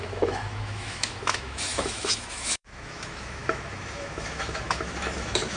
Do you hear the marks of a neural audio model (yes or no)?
yes